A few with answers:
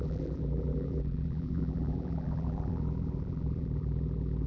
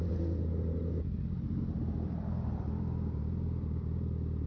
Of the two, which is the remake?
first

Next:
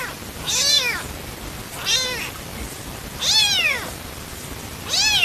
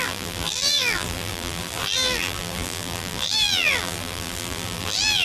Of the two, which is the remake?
second